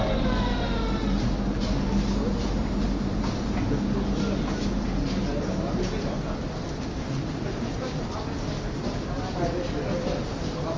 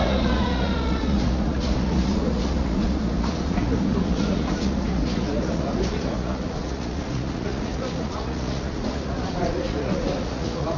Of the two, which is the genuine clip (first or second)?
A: first